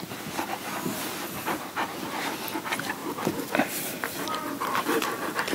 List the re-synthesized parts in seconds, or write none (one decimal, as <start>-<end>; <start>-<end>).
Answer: none